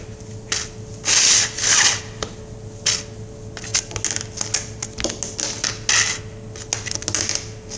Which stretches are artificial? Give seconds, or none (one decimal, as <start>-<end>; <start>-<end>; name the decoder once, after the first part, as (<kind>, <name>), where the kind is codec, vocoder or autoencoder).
none